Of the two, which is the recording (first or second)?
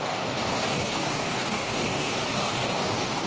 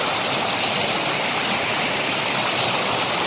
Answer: second